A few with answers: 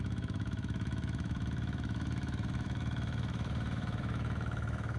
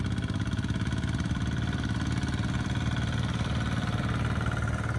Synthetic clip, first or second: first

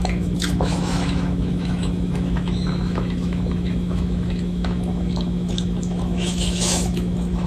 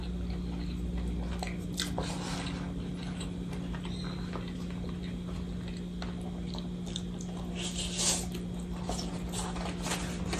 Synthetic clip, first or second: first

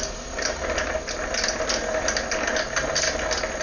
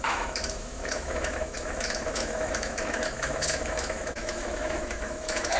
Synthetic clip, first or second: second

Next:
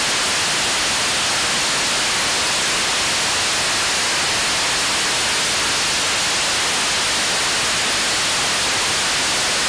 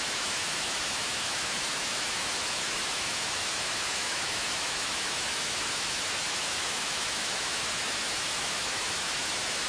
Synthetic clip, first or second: second